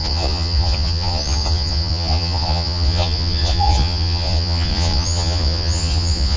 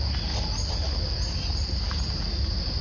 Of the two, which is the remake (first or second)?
first